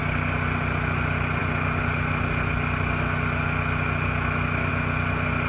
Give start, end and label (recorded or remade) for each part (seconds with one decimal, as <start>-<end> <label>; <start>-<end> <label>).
0.0-5.5 recorded